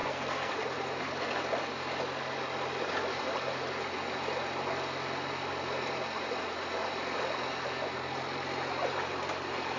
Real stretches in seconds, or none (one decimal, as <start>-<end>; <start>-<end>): 0.5-9.8